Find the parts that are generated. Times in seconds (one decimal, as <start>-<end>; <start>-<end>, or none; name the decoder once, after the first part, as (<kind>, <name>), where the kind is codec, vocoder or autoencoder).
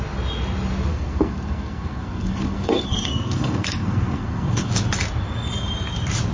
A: 0.9-4.7 (codec, SNAC)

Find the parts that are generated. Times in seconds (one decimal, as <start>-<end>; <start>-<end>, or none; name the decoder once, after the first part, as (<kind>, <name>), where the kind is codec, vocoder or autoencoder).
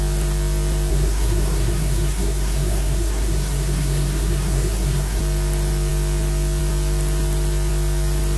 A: 0.9-5.2 (codec, SNAC)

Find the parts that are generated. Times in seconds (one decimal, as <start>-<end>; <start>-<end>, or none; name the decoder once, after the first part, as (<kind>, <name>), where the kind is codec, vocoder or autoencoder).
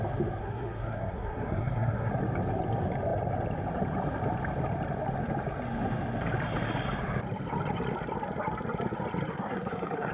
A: 0.4-2.1 (codec, SNAC); 9.3-10.1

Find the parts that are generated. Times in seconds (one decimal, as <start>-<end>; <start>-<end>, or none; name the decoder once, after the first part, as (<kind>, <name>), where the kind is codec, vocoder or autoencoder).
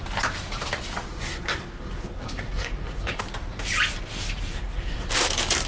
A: 1.1-3.2 (codec, SNAC); 4.5-5.1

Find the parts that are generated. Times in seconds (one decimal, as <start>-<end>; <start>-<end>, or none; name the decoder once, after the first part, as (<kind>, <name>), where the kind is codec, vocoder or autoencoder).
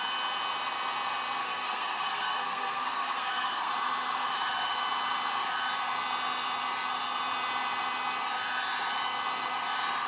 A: 1.4-3.7 (codec, SNAC)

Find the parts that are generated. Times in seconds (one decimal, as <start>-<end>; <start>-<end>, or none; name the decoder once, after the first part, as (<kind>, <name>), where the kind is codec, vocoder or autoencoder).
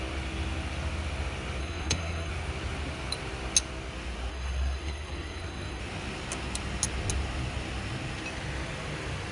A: 1.6-2.3 (codec, SNAC); 4.3-5.8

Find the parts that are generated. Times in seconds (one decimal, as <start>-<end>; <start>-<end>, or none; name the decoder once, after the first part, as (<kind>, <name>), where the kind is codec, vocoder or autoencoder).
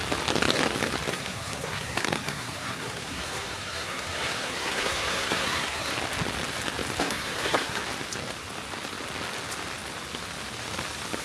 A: 1.1-5.9 (codec, SNAC); 7.0-7.8